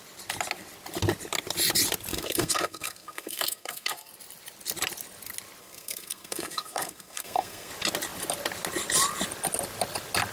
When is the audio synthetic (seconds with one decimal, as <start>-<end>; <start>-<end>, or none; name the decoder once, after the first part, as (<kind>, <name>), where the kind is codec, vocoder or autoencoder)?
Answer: 2.1-4.1 (codec, SNAC); 5.6-7.7